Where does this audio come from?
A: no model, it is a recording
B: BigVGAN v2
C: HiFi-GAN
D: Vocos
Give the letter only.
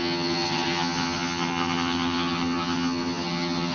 C